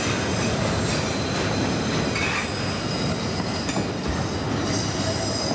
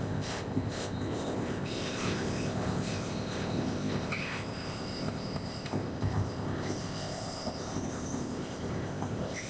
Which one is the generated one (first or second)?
second